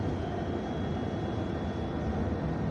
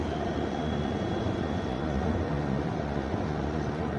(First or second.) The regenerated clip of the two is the second